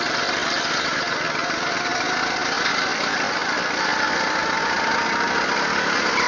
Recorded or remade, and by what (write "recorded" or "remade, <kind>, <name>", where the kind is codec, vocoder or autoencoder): recorded